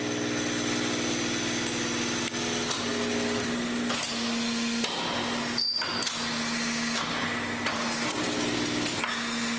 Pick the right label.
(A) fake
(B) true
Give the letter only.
B